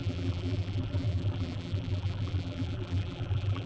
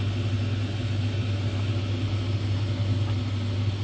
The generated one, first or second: first